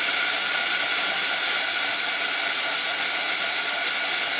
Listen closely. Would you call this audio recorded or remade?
recorded